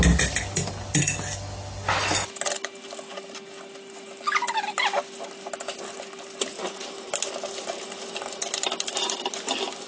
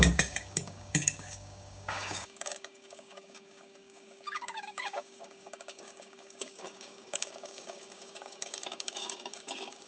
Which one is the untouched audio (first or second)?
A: first